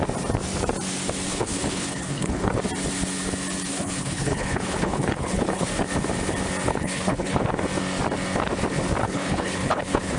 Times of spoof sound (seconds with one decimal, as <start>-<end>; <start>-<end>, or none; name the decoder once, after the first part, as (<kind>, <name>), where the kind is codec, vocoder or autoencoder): 1.3-2.6 (codec, HILCodec); 3.7-5.7; 6.7-7.4; 9.0-10.2